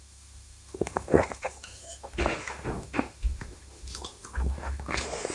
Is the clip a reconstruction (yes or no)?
yes